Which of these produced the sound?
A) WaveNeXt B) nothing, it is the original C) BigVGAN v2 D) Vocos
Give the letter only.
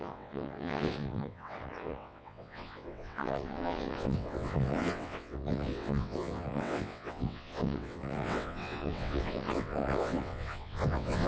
A